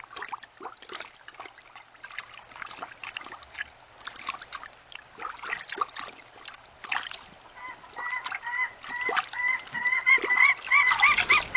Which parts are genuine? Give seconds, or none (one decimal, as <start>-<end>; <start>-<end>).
0.0-11.6